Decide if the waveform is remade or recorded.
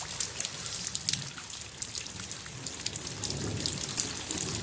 recorded